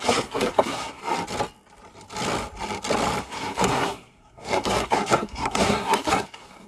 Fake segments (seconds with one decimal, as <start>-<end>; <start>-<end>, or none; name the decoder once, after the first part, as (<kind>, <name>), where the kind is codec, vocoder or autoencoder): 0.0-1.0 (codec, SNAC); 3.2-6.7